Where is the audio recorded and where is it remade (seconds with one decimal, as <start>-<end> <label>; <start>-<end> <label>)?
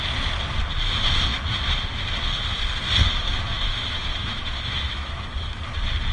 0.0-3.0 recorded; 3.0-5.6 remade; 5.6-6.1 recorded